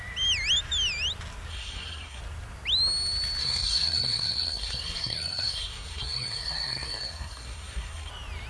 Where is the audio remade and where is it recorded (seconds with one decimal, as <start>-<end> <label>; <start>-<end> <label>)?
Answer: 0.0-1.5 recorded; 1.5-2.2 remade; 2.2-3.4 recorded; 3.4-8.1 remade; 8.1-8.5 recorded